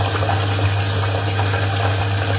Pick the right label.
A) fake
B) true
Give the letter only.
B